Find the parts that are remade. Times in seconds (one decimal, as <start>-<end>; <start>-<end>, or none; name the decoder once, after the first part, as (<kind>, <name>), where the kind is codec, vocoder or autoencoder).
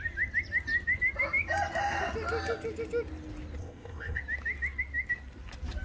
3.6-4.2 (codec, ZipCodec)